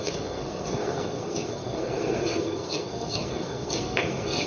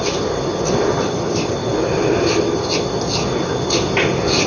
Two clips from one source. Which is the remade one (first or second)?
first